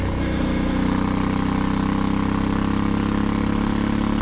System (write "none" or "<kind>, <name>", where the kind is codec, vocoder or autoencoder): none